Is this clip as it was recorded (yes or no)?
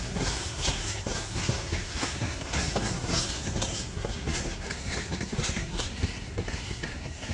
no